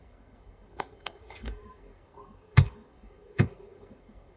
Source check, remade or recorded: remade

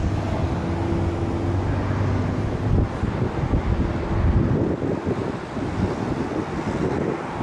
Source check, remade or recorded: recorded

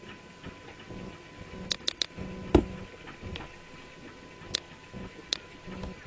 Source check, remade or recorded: recorded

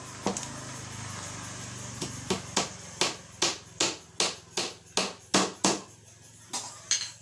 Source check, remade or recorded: recorded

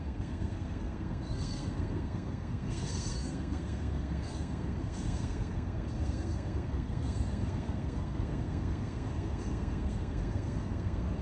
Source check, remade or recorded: remade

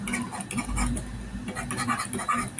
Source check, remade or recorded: recorded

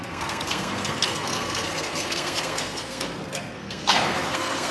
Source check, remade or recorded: remade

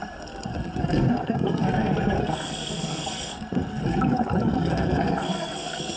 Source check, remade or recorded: remade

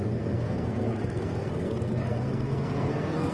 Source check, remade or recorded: remade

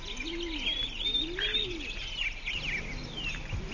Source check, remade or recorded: recorded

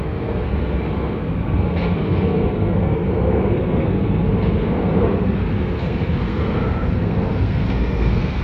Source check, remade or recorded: remade